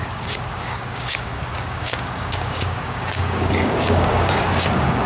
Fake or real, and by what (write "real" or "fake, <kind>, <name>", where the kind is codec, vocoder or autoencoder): fake, codec, DAC